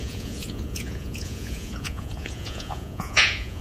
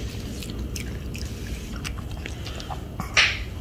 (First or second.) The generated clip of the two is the first